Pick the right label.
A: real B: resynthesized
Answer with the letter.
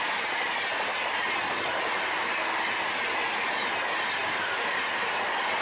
A